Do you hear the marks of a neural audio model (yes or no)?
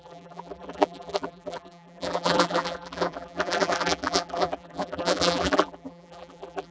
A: yes